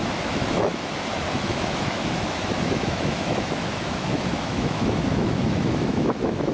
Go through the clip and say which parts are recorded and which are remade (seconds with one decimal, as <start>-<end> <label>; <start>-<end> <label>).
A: 0.0-6.5 remade